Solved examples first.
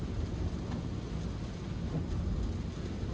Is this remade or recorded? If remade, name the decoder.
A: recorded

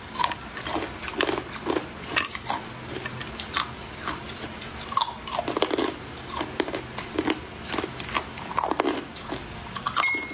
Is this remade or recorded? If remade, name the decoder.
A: recorded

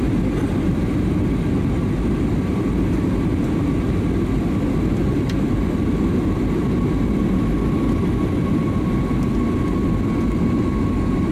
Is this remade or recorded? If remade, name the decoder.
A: recorded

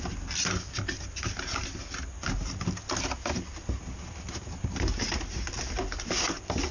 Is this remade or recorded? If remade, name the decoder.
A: recorded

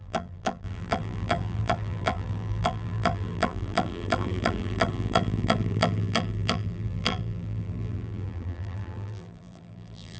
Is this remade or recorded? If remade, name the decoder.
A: remade, vocoder, BigVGAN v2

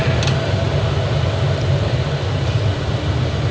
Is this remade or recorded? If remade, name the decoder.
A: recorded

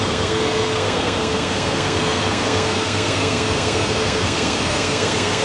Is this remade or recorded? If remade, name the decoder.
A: remade, codec, SNAC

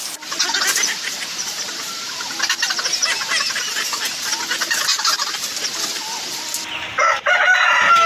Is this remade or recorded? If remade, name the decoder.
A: recorded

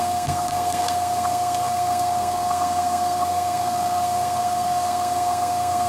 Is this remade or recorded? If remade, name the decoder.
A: remade, codec, SNAC